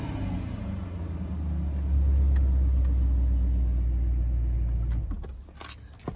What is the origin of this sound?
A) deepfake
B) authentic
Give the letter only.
B